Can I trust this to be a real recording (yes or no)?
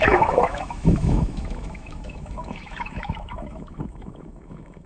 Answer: no